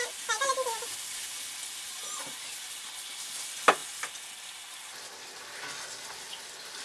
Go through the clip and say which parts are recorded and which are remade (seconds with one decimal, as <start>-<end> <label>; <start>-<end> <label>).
0.0-6.8 recorded